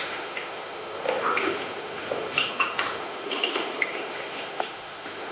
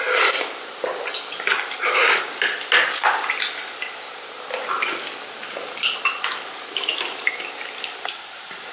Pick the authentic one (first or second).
second